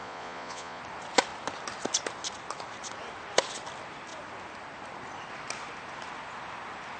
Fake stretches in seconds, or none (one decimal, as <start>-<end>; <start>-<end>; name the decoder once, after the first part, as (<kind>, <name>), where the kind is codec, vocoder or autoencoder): 0.0-0.8 (vocoder, Vocos)